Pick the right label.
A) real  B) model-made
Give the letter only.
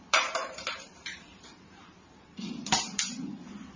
B